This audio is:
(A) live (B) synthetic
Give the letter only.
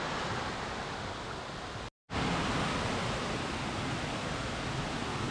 A